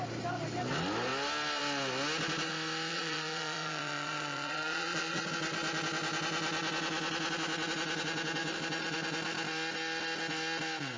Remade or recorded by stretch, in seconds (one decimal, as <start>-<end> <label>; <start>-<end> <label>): 0.0-2.9 recorded; 2.9-5.2 remade; 5.2-11.0 recorded